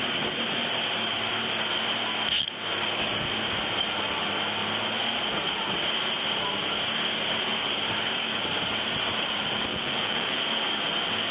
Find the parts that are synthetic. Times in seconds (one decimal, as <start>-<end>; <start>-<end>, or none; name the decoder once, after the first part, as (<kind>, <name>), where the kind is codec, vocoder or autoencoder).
9.7-10.4 (vocoder, Vocos)